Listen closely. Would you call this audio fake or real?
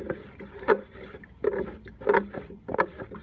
real